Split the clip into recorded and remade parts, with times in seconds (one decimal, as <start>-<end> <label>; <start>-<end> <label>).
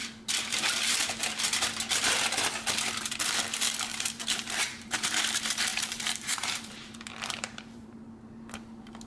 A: 0.0-1.4 remade; 1.4-3.9 recorded; 3.9-5.2 remade; 5.2-5.7 recorded; 5.7-8.0 remade; 8.0-9.1 recorded